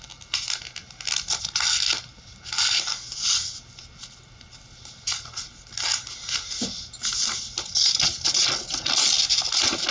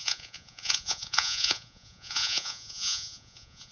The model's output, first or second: second